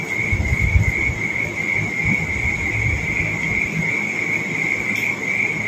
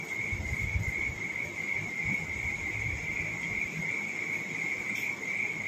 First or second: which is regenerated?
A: second